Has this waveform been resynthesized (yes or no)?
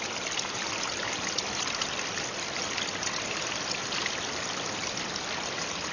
no